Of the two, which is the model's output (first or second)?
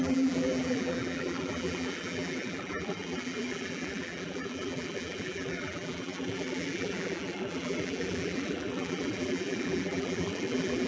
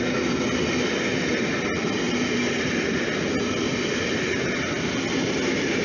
first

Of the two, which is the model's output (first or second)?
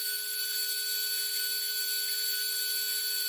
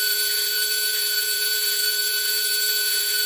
second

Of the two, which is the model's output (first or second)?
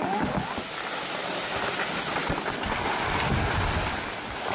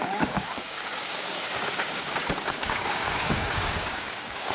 second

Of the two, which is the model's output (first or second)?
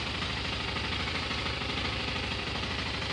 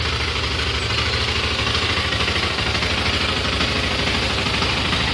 first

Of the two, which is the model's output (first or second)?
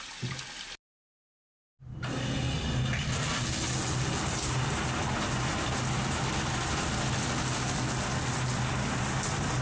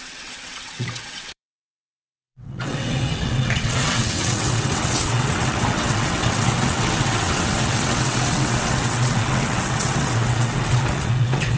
second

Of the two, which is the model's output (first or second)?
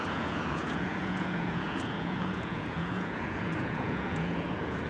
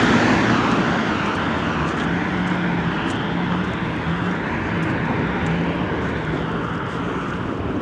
first